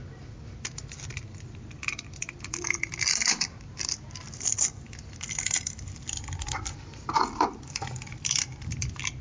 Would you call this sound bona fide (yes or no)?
no